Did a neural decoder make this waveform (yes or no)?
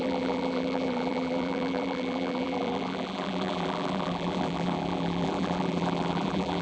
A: yes